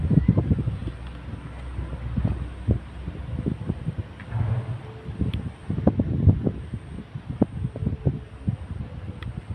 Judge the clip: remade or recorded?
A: recorded